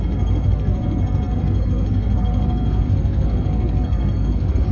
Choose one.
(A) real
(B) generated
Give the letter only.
B